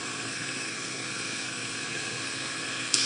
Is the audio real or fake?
fake